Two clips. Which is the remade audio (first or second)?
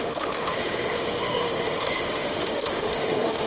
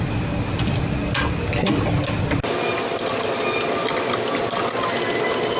first